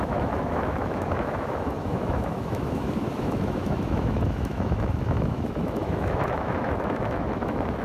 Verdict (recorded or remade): remade